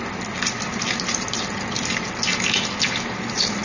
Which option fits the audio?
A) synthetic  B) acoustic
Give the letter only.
B